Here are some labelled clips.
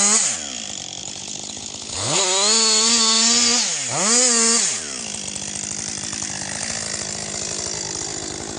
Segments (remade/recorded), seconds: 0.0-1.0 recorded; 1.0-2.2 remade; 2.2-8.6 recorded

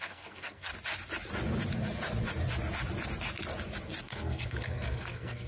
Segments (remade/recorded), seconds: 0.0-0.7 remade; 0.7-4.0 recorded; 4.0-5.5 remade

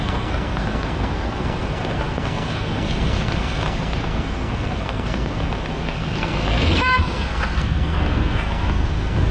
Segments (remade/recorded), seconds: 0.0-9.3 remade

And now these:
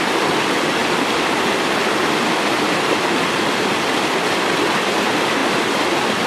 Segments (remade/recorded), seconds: 0.0-6.3 recorded

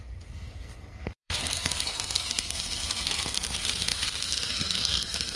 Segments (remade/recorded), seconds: 0.0-5.4 remade

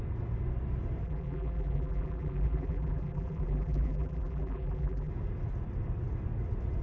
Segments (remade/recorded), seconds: 0.0-1.0 recorded; 1.0-5.1 remade; 5.1-6.8 recorded